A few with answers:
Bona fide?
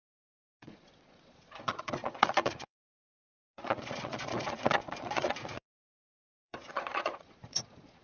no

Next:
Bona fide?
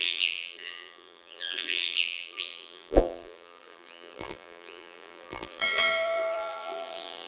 no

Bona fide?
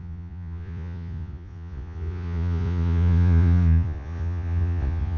no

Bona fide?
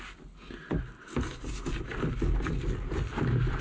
yes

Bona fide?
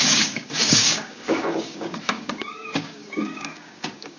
no